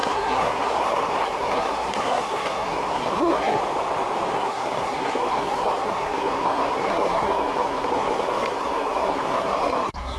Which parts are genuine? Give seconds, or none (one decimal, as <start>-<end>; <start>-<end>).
3.6-4.3